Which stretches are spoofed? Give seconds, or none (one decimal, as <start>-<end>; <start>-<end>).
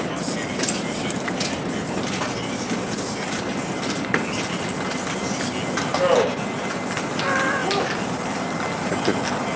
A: none